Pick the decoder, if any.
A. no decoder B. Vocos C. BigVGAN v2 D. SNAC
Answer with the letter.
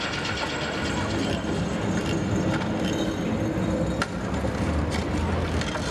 A